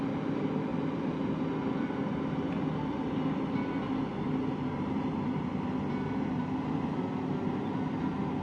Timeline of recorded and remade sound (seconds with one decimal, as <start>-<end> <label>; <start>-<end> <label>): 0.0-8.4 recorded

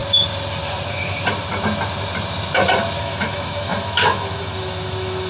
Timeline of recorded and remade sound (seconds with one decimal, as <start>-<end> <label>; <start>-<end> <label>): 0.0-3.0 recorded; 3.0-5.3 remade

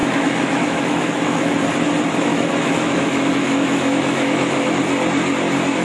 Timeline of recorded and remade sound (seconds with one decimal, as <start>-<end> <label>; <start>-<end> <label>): 0.0-1.5 remade; 1.5-2.3 recorded; 2.3-4.8 remade; 4.8-5.8 recorded

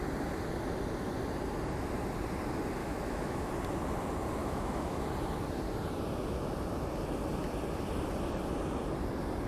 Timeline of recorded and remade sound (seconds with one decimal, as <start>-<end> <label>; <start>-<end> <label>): 0.0-2.8 recorded; 2.8-3.5 remade; 3.5-4.4 recorded; 4.4-5.0 remade; 5.0-9.5 recorded